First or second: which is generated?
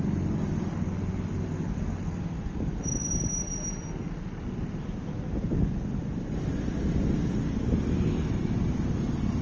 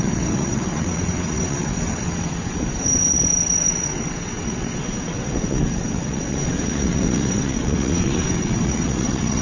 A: second